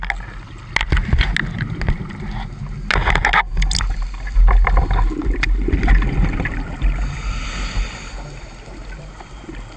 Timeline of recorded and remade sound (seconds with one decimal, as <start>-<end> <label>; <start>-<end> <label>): 0.0-9.8 recorded